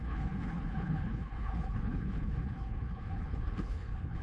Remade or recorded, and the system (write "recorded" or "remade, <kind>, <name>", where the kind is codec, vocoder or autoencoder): remade, codec, HILCodec